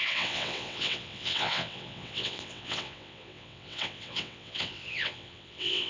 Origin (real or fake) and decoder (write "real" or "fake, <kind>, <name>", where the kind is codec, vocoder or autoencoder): fake, vocoder, WaveNeXt